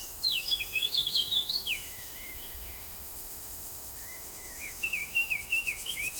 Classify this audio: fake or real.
fake